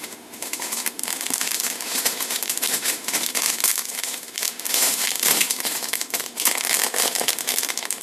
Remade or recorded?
remade